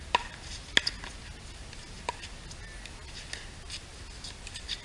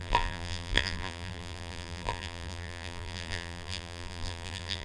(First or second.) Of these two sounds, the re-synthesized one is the second